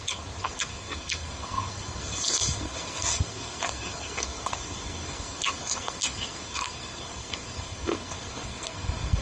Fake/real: fake